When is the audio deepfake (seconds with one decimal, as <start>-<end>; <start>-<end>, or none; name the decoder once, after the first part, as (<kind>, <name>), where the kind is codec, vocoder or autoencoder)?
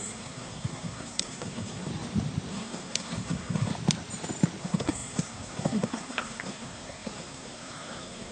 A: 0.0-1.9 (codec, SNAC); 2.5-3.7; 4.6-8.3